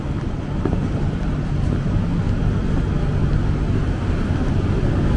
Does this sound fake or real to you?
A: real